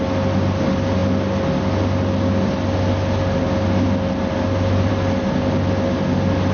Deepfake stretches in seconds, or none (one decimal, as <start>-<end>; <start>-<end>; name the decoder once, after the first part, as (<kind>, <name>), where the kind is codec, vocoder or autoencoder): none